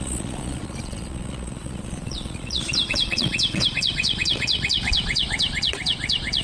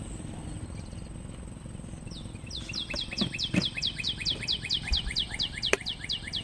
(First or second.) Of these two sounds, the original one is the second